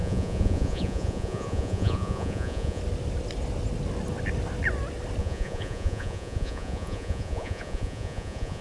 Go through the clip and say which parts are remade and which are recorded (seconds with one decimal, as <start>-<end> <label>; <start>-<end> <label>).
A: 0.0-2.8 remade; 2.8-5.2 recorded; 5.2-8.6 remade